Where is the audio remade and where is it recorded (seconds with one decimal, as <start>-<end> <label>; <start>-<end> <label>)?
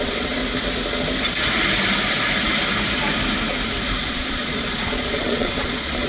0.0-0.4 remade; 0.4-4.1 recorded; 4.1-6.1 remade